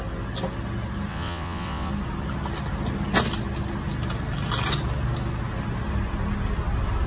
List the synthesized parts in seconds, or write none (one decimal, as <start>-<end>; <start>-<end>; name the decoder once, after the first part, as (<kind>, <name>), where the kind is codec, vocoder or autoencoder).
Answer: 1.1-1.9 (vocoder, WaveNeXt)